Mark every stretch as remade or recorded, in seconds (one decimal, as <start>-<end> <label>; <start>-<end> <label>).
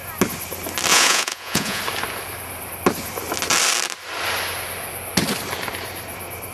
0.0-0.9 recorded; 0.9-1.8 remade; 1.8-6.5 recorded